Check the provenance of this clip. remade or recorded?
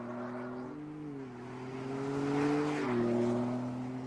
recorded